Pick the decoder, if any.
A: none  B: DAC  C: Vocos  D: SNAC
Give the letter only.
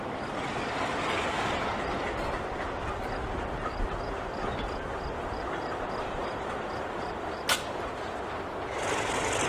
A